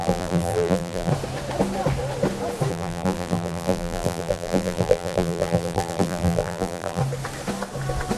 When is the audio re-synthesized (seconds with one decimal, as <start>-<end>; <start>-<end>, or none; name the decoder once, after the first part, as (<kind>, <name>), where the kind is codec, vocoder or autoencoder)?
0.0-1.1 (vocoder, BigVGAN v2); 2.7-7.0

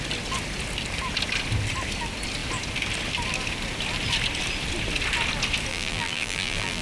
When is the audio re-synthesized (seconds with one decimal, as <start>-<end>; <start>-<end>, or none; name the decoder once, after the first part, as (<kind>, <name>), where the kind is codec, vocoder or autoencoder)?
5.7-6.8 (vocoder, BigVGAN v2)

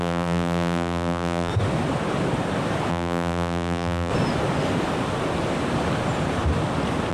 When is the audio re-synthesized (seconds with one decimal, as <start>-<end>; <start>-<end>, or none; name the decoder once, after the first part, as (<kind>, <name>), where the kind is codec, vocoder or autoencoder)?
0.0-1.5 (vocoder, BigVGAN v2); 2.9-4.1

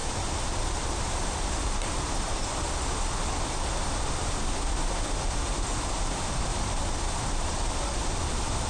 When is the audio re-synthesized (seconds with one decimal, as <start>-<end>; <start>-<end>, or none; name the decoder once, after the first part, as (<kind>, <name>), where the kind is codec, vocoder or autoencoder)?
0.0-2.6 (vocoder, BigVGAN v2); 6.5-7.6

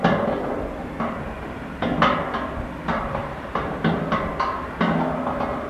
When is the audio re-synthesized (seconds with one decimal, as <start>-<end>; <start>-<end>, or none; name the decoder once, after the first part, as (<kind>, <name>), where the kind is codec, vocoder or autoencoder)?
3.2-4.0 (vocoder, BigVGAN v2)

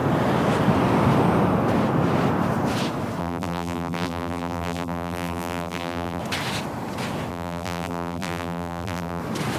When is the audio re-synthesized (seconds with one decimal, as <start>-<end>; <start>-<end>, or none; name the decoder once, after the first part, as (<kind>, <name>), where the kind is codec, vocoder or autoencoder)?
3.2-6.2 (vocoder, BigVGAN v2); 7.3-9.2